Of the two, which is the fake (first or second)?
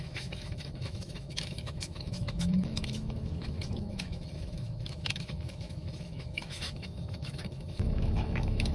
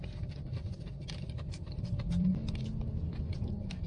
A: first